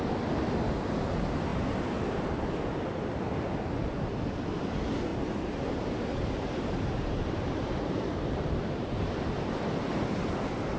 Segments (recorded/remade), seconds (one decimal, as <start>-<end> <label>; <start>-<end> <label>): 0.0-5.1 recorded; 5.1-9.9 remade; 9.9-10.8 recorded